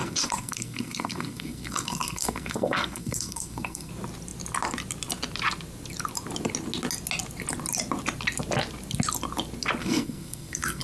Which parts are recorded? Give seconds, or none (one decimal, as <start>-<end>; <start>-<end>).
3.9-9.8